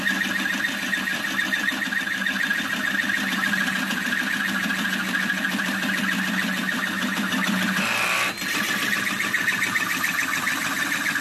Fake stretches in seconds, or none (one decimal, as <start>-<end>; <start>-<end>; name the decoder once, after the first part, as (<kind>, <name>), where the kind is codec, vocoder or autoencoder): none